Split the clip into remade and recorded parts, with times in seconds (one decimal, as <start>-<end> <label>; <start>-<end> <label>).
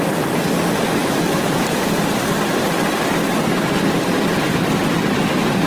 0.0-5.7 recorded